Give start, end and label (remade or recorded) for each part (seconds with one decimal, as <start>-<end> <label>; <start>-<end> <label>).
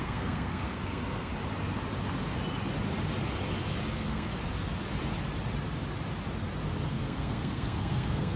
0.0-1.3 remade; 1.3-3.9 recorded; 3.9-4.3 remade; 4.3-6.9 recorded; 6.9-8.4 remade